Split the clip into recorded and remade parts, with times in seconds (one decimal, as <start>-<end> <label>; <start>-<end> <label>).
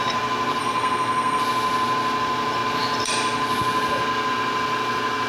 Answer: 0.0-0.6 recorded; 0.6-1.4 remade; 1.4-5.3 recorded